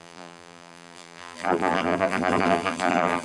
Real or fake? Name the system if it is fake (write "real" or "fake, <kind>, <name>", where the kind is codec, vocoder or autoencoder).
fake, vocoder, BigVGAN v2